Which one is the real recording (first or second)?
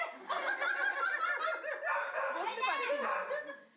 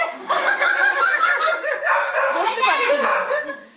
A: first